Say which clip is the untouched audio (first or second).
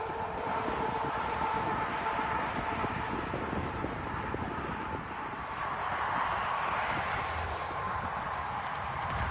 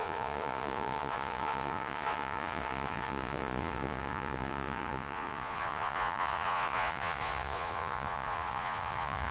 first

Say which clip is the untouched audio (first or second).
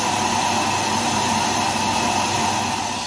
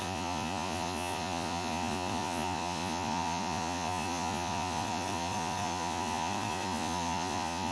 first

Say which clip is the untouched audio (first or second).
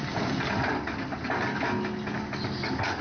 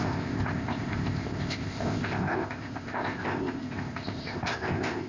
first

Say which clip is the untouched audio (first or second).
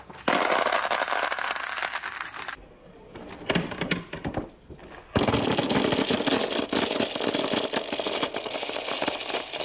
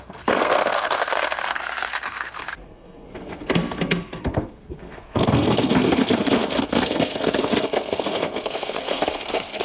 first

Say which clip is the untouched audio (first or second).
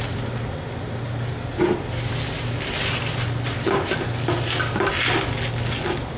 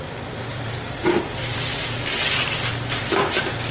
first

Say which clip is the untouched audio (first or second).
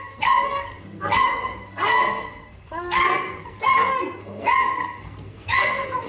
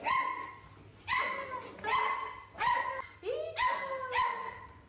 second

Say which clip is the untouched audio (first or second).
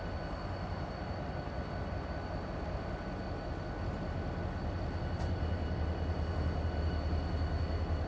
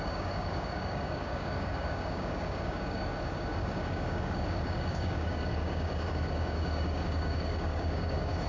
first